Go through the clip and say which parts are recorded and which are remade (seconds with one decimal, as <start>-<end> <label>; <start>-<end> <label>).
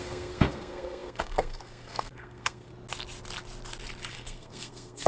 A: 0.0-2.7 remade; 2.7-4.1 recorded; 4.1-5.1 remade